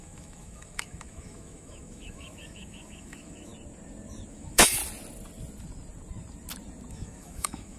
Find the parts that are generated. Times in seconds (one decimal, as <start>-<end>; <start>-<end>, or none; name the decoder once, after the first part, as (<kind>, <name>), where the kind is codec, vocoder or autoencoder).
0.0-3.5 (autoencoder, DAC-VAE); 4.3-4.8; 6.9-7.8